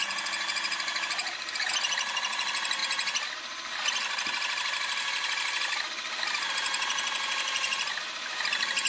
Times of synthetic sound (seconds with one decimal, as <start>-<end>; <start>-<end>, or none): 0.0-2.8; 6.5-8.9